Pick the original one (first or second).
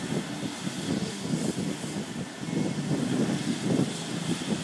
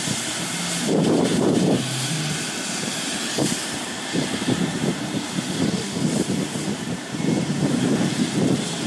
first